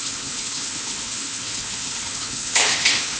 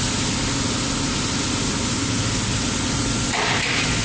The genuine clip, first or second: second